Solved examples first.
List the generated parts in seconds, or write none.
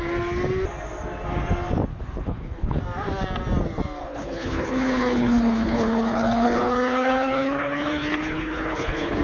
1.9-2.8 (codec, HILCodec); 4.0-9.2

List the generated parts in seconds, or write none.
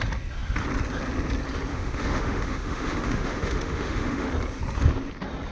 1.7-4.3 (autoencoder, DAC-VAE)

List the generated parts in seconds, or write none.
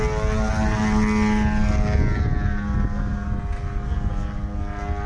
none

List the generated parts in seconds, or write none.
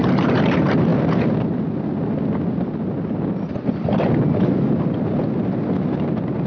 none